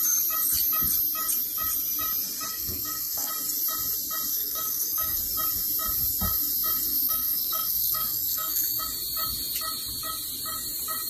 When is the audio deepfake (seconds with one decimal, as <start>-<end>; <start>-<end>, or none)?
2.5-3.3; 4.3-5.2; 6.9-8.8